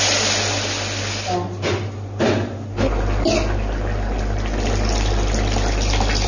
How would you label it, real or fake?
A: real